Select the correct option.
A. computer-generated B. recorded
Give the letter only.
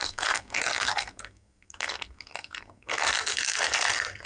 A